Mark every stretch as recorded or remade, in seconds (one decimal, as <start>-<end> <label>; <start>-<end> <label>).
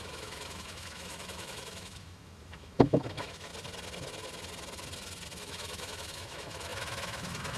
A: 0.0-3.5 remade; 3.5-5.4 recorded; 5.4-7.6 remade